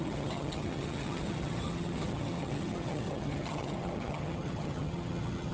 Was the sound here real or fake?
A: fake